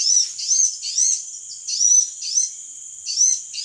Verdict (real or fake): real